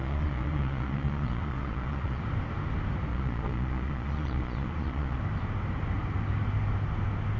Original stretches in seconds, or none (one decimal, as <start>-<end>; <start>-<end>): 2.2-3.1; 5.2-7.4